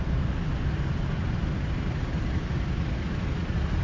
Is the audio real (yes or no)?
yes